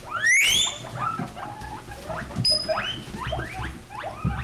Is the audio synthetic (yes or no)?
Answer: no